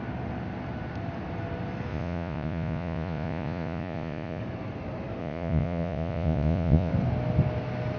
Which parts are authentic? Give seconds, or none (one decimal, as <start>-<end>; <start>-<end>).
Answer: 0.0-1.9; 4.4-5.2; 6.9-8.0